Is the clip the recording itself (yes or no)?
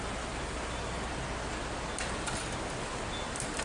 yes